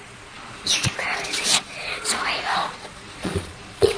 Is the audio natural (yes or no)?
no